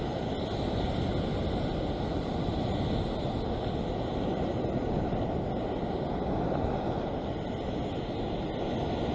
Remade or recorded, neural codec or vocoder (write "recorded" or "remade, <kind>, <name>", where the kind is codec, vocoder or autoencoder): recorded